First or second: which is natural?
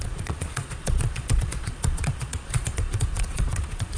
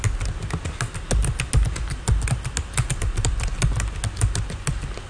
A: second